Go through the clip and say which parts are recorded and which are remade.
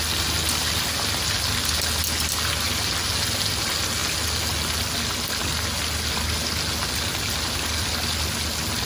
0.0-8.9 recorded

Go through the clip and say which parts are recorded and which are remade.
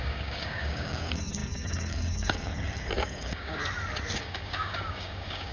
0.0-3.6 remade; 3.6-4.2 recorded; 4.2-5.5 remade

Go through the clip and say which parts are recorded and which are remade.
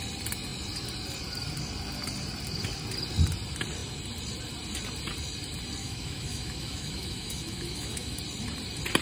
0.0-5.8 recorded; 5.8-8.2 remade; 8.2-9.0 recorded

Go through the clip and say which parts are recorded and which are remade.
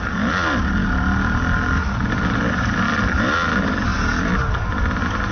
0.0-5.3 recorded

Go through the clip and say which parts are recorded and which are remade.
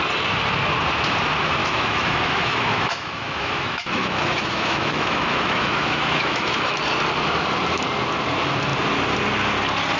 0.0-1.6 recorded; 1.6-6.8 remade; 6.8-10.0 recorded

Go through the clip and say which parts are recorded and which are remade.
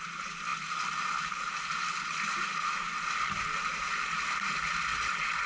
0.0-5.5 recorded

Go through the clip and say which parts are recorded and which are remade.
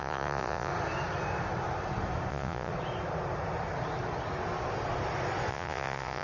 0.0-0.7 remade; 0.7-2.3 recorded; 2.3-2.7 remade; 2.7-5.5 recorded; 5.5-6.2 remade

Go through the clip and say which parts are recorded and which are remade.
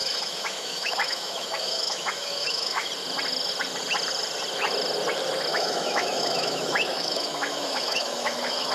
0.0-2.9 remade; 2.9-5.5 recorded; 5.5-8.7 remade